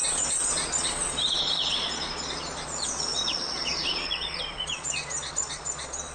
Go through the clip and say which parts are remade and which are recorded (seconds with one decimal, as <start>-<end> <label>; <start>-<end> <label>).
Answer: 0.0-6.1 remade

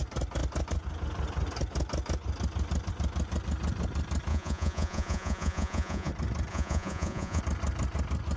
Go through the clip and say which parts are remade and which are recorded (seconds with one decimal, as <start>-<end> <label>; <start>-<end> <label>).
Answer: 0.0-4.3 recorded; 4.3-6.1 remade; 6.1-6.5 recorded; 6.5-7.4 remade; 7.4-8.4 recorded